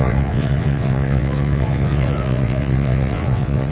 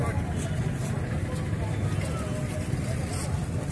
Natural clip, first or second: second